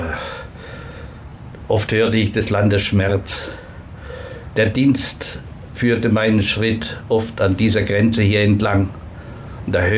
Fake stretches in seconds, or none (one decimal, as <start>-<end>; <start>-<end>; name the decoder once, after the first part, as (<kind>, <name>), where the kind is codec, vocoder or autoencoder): 1.3-2.4 (vocoder, BigVGAN v2); 3.1-7.0

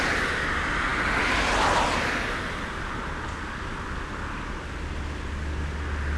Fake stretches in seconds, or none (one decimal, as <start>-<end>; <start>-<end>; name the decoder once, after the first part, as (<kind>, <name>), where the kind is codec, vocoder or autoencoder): none

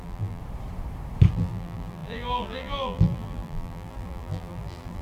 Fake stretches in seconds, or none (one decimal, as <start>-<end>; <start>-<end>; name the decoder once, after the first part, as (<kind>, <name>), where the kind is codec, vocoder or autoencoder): 0.0-0.4 (vocoder, BigVGAN v2); 1.3-5.0

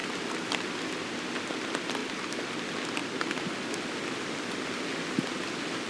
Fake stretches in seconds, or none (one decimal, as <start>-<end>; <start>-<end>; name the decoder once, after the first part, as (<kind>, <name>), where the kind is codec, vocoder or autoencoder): 2.0-2.5 (vocoder, BigVGAN v2)

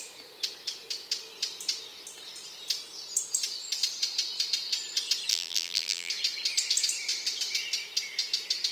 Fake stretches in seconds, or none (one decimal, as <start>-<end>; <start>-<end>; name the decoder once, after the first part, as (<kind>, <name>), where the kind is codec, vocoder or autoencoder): 5.3-6.1 (vocoder, BigVGAN v2)

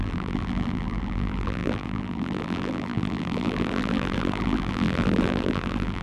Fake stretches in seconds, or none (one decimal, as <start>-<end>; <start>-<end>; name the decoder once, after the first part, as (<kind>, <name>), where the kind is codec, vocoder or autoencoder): 0.0-6.0 (vocoder, BigVGAN v2)